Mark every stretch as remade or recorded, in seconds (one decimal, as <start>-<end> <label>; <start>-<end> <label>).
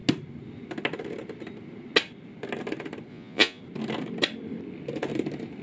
0.0-3.1 recorded; 3.1-3.6 remade; 3.6-5.6 recorded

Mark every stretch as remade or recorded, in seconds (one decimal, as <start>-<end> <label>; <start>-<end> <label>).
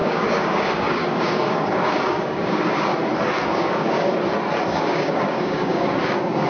0.0-2.9 remade; 2.9-3.4 recorded; 3.4-4.1 remade; 4.1-4.7 recorded; 4.7-6.5 remade